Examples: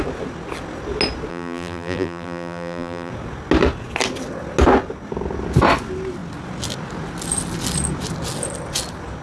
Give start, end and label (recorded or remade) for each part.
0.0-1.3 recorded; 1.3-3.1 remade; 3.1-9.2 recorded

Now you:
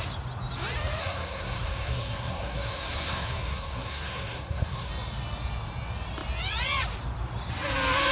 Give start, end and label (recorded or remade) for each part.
0.0-1.0 recorded; 1.0-4.9 remade; 4.9-8.1 recorded

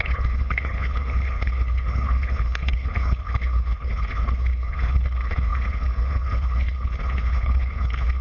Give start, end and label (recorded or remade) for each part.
0.0-8.2 remade